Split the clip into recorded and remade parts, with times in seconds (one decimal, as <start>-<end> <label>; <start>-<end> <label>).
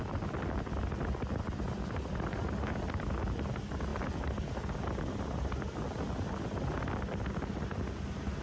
0.0-8.4 recorded